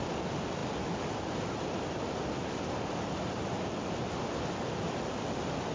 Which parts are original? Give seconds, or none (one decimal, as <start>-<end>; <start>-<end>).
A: 0.0-5.7